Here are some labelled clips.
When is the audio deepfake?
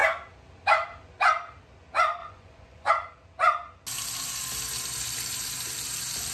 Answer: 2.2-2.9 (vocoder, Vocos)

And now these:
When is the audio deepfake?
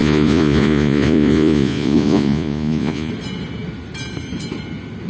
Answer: 0.0-3.1 (vocoder, Vocos)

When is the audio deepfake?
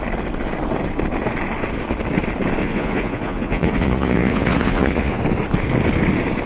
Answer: 2.6-5.2 (vocoder, Vocos)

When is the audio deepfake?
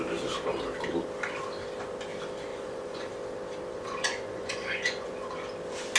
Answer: 2.5-3.1 (vocoder, Vocos); 3.7-5.3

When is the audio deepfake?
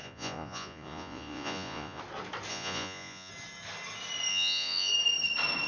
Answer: 0.0-2.0 (vocoder, Vocos); 2.5-3.3; 4.3-4.9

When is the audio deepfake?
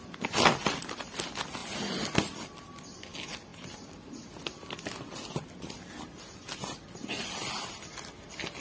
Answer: none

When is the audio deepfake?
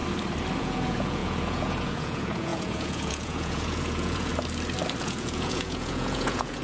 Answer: 0.6-4.3 (vocoder, Vocos); 5.0-6.6